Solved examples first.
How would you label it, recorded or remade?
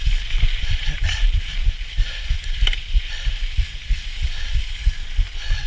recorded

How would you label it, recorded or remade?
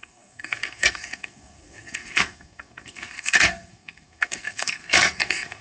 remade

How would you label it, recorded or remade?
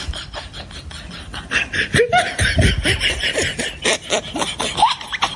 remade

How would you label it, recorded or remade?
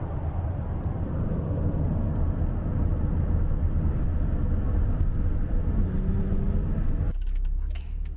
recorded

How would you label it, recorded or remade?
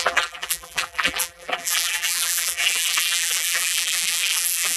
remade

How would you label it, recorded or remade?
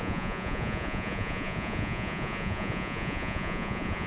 remade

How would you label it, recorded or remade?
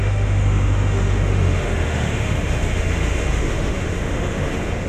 remade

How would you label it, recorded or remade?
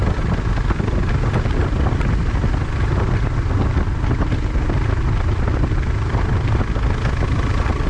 recorded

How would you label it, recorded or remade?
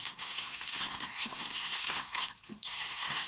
remade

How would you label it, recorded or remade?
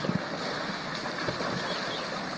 recorded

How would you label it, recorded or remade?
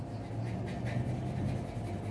recorded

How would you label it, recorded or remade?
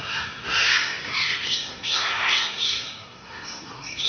remade